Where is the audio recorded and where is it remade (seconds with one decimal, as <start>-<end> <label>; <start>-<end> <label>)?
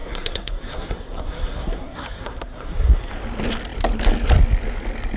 0.0-3.1 remade; 3.1-5.2 recorded